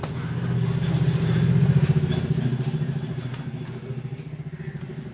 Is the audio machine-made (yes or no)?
no